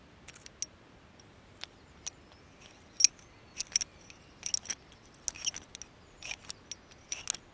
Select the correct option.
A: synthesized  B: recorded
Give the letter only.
B